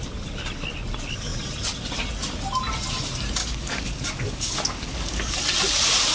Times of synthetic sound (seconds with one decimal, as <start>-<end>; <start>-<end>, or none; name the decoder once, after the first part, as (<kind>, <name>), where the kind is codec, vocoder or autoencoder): 3.4-5.4 (codec, DAC)